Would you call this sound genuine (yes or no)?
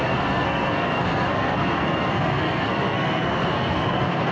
no